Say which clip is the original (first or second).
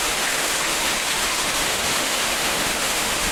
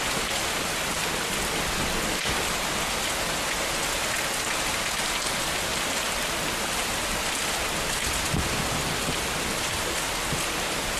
second